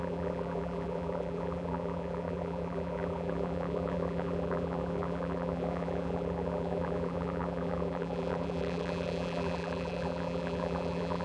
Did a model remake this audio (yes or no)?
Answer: yes